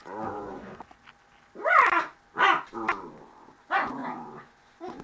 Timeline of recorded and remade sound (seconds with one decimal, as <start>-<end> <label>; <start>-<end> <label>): 0.0-0.7 remade; 0.7-3.0 recorded; 3.0-5.0 remade